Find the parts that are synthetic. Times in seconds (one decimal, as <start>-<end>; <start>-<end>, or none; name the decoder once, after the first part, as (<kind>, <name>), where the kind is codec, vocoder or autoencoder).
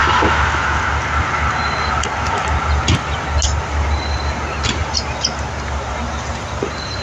none